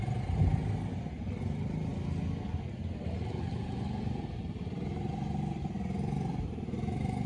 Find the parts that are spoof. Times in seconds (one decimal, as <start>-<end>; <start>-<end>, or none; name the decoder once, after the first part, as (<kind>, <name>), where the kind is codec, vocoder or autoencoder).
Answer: 6.3-7.3 (vocoder, BigVGAN v2)